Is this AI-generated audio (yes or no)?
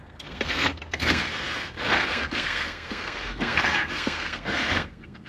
yes